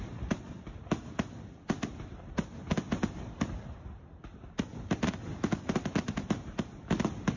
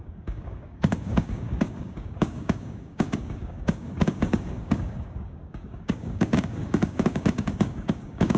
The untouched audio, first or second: first